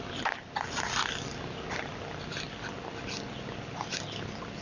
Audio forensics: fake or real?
real